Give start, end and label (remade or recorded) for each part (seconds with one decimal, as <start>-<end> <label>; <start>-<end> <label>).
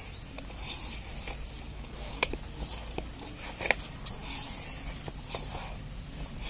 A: 0.0-1.7 recorded; 1.7-2.3 remade; 2.3-6.5 recorded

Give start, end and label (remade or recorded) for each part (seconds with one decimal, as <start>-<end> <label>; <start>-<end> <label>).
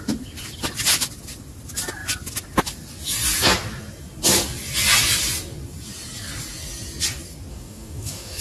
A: 0.0-7.5 recorded; 7.5-8.4 remade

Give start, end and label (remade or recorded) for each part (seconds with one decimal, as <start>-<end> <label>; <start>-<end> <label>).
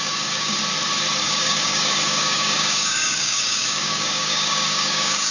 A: 0.0-0.6 remade; 0.6-1.2 recorded; 1.2-5.3 remade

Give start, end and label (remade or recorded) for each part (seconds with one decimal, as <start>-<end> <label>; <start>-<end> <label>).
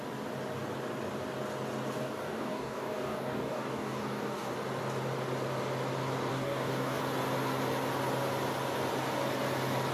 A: 0.0-2.0 recorded; 2.0-4.5 remade; 4.5-6.3 recorded; 6.3-7.0 remade; 7.0-9.9 recorded